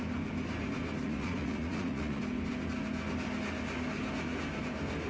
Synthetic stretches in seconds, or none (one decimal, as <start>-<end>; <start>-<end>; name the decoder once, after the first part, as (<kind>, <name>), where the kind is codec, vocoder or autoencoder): 1.0-2.2 (vocoder, Vocos)